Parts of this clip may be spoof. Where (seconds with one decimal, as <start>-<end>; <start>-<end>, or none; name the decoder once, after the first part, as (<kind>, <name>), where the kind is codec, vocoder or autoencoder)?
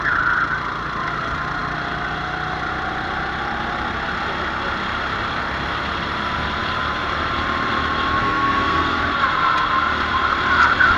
8.2-9.0 (codec, SNAC)